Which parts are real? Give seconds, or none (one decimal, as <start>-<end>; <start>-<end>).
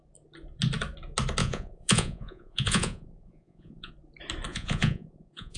0.0-1.4; 3.9-4.5